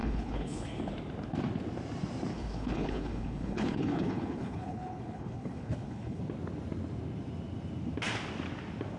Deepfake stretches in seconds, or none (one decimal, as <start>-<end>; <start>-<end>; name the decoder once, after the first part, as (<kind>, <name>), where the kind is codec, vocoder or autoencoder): 0.0-0.8 (codec, HILCodec); 2.3-6.2

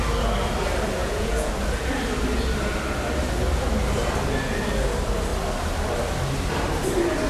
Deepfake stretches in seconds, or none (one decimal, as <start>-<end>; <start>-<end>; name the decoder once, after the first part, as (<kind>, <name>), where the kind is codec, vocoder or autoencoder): 1.0-1.5 (vocoder, Vocos)

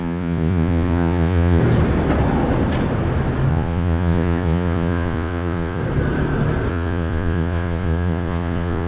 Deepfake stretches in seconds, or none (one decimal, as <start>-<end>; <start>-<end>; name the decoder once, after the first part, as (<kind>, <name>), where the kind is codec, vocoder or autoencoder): 0.0-1.6 (vocoder, Vocos); 3.5-5.8; 6.7-8.9